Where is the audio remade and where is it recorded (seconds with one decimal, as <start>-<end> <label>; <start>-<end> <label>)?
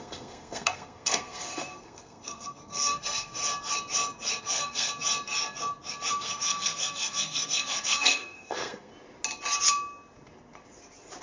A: 0.0-3.4 remade; 3.4-4.4 recorded; 4.4-4.9 remade; 4.9-6.1 recorded; 6.1-8.9 remade; 8.9-11.2 recorded